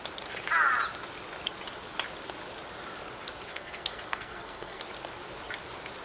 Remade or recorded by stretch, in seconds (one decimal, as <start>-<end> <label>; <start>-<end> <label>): 0.0-3.5 recorded; 3.5-4.8 remade; 4.8-6.0 recorded

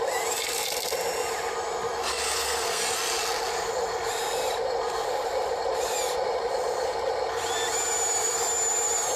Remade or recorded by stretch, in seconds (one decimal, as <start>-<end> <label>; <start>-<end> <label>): 0.0-2.1 recorded; 2.1-2.8 remade; 2.8-9.2 recorded

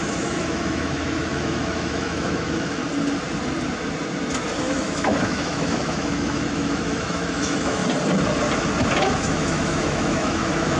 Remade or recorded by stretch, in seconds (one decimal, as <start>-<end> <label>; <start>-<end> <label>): 0.0-2.8 remade; 2.8-4.6 recorded; 4.6-7.8 remade; 7.8-9.2 recorded; 9.2-10.8 remade